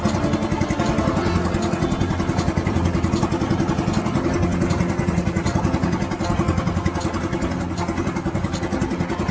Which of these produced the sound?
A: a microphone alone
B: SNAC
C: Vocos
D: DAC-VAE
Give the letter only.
A